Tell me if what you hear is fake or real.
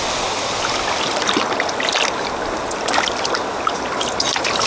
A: real